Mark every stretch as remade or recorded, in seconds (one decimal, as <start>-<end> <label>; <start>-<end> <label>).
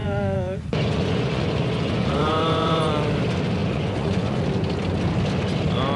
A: 0.0-2.9 remade; 2.9-3.6 recorded; 3.6-4.4 remade; 4.4-6.0 recorded